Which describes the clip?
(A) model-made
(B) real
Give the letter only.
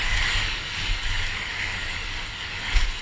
A